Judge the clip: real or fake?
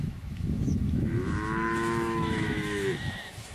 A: fake